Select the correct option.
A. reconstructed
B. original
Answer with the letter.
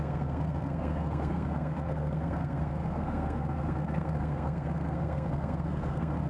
A